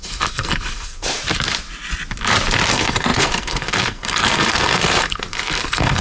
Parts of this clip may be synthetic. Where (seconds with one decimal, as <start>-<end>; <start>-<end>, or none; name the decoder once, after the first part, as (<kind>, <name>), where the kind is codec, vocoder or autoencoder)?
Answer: 0.0-1.2 (codec, SNAC); 2.7-6.0